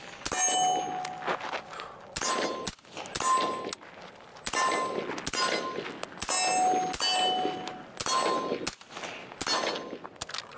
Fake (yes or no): no